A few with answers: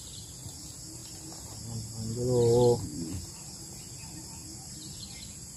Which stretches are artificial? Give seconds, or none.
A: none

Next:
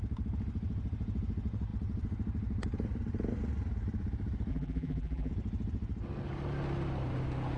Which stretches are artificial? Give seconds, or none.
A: 4.5-5.3 (vocoder, BigVGAN v2)

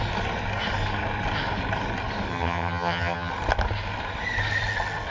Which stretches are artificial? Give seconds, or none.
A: 2.3-3.3 (vocoder, HiFi-GAN)

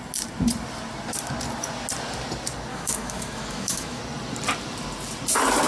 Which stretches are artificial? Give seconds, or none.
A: 2.7-4.0 (autoencoder, DAC-VAE)

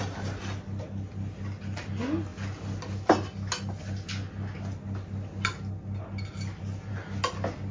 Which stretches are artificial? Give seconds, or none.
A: none

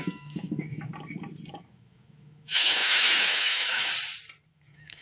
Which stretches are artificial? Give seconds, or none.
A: 0.0-0.9 (autoencoder, DAC-VAE); 1.5-3.9; 4.5-5.0

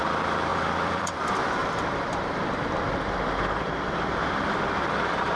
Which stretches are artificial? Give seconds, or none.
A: 0.5-1.1 (vocoder, BigVGAN v2); 1.6-2.8

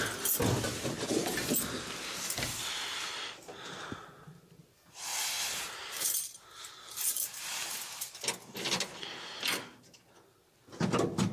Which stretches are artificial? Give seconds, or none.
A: 5.1-8.1 (vocoder, BigVGAN v2)